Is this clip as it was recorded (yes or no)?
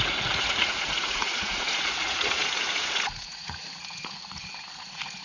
no